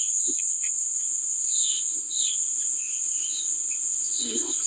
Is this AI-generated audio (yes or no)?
yes